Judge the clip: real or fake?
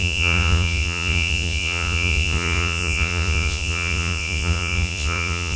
fake